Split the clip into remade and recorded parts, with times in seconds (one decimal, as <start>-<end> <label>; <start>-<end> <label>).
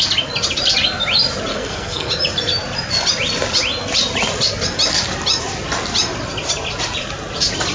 0.0-1.5 recorded; 1.5-2.1 remade; 2.1-7.7 recorded